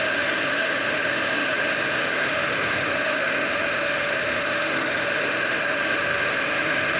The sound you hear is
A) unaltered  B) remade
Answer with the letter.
B